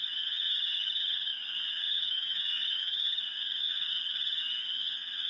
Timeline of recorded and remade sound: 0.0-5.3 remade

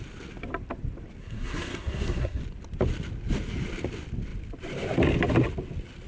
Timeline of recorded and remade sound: 0.0-1.2 recorded; 1.2-2.4 remade; 2.4-6.1 recorded

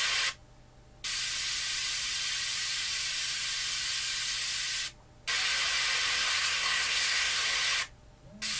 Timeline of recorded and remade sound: 0.0-6.2 recorded; 6.2-7.4 remade; 7.4-8.6 recorded

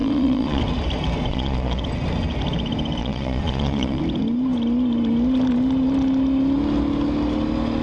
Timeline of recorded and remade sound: 0.0-0.6 remade; 0.6-1.3 recorded; 1.3-1.8 remade; 1.8-3.0 recorded; 3.0-4.0 remade; 4.0-7.8 recorded